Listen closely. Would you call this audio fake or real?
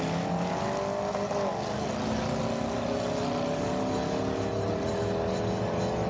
real